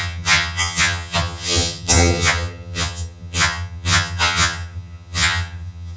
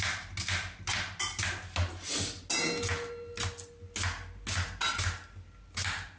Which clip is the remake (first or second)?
first